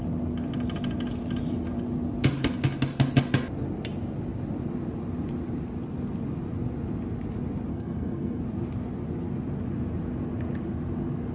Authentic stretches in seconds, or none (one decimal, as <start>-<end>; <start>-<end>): 0.0-7.7; 8.4-11.3